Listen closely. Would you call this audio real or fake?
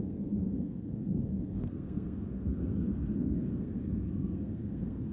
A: fake